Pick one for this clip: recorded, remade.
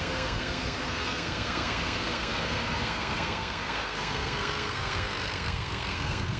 remade